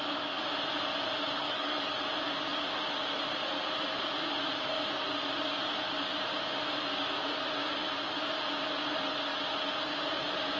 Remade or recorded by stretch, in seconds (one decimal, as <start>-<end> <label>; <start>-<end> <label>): 0.0-1.4 recorded; 1.4-2.0 remade; 2.0-10.6 recorded